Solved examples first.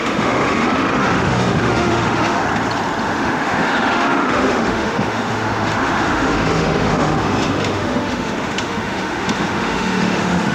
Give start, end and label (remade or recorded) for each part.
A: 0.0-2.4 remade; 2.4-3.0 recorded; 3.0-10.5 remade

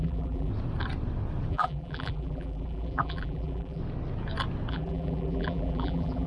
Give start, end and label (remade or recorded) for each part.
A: 0.0-0.5 remade; 0.5-1.5 recorded; 1.5-3.8 remade; 3.8-4.7 recorded; 4.7-6.3 remade